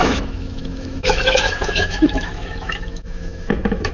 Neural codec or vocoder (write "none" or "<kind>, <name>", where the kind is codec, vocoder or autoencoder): autoencoder, DAC-VAE